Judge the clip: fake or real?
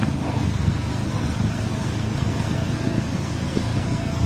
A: fake